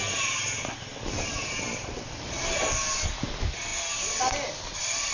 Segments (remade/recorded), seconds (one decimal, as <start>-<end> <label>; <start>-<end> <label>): 0.0-5.1 recorded